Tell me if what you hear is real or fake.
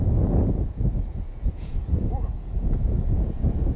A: fake